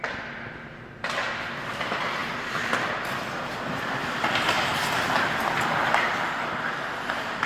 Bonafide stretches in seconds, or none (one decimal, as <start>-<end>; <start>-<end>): 0.0-7.5